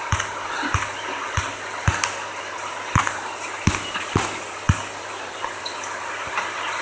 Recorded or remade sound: recorded